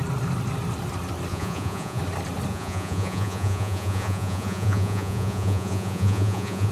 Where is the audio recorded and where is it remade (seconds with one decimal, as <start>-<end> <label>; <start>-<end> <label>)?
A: 0.0-1.3 recorded; 1.3-2.0 remade; 2.0-2.5 recorded; 2.5-6.7 remade